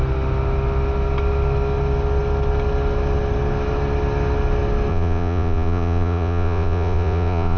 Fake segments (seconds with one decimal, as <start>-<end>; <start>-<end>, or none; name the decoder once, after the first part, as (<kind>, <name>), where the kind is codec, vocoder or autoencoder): 4.9-7.6 (vocoder, Vocos)